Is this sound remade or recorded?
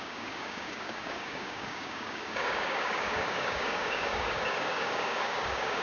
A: remade